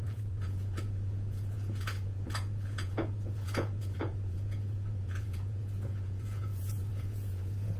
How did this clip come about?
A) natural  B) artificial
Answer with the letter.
B